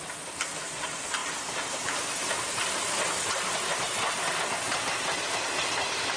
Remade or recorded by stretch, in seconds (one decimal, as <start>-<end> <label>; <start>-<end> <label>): 0.0-1.2 recorded; 1.2-4.8 remade; 4.8-6.2 recorded